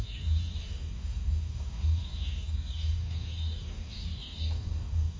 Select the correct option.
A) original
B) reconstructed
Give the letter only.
B